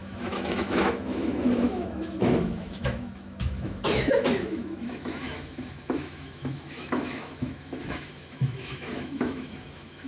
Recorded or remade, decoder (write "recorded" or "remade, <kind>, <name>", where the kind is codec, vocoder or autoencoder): remade, autoencoder, DAC-VAE